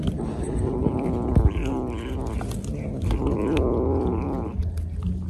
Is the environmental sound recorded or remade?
recorded